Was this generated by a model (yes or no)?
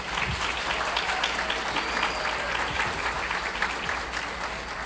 no